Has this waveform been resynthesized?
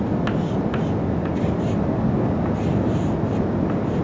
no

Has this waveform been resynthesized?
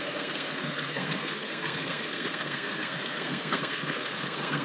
yes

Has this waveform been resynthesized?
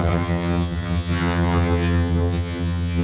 yes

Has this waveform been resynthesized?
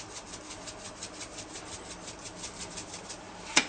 no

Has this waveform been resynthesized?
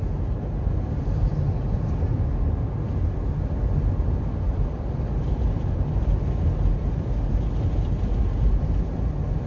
no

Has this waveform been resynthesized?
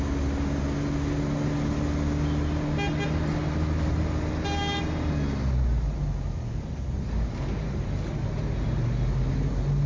no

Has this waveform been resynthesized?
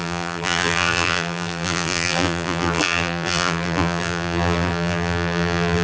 yes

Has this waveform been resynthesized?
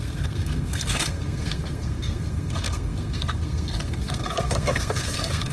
yes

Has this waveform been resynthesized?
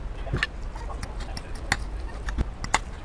no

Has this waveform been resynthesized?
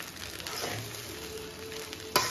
no